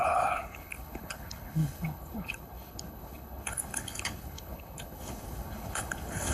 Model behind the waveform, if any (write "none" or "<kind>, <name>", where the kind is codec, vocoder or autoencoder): codec, HILCodec